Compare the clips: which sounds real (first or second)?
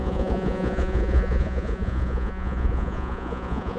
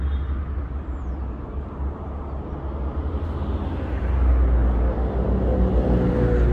second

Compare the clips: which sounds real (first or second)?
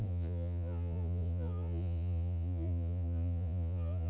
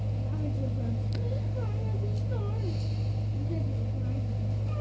second